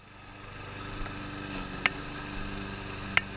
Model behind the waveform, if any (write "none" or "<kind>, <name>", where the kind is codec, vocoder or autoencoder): none